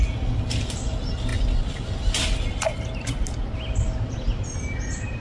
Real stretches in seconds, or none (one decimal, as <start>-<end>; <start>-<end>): 0.0-5.2